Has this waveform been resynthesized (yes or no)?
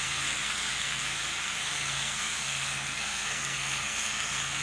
yes